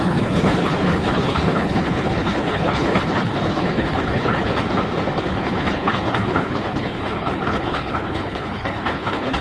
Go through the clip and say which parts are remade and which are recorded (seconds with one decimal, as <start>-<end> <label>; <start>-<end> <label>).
0.0-4.5 remade; 4.5-5.2 recorded; 5.2-9.4 remade